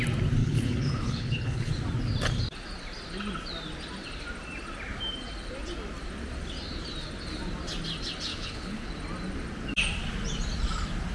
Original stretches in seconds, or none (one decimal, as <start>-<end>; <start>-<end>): 0.0-0.4; 1.7-8.3; 8.9-11.1